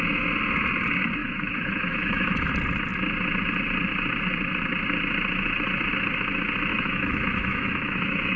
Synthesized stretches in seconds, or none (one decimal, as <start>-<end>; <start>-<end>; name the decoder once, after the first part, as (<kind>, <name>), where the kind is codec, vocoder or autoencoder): 1.2-2.5 (autoencoder, DAC-VAE); 6.7-8.4